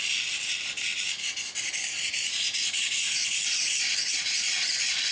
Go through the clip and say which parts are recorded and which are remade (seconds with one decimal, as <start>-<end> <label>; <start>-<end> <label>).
0.0-5.1 recorded